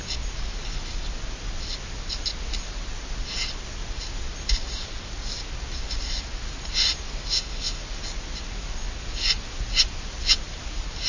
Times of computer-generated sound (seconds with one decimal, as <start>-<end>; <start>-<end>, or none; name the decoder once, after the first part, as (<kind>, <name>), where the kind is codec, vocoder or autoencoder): 7.3-7.8 (autoencoder, DAC-VAE)